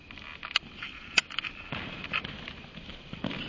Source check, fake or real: real